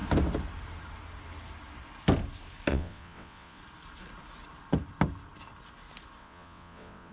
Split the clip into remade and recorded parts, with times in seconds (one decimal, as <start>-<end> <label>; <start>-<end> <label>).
0.0-2.7 recorded; 2.7-3.6 remade; 3.6-6.2 recorded; 6.2-7.1 remade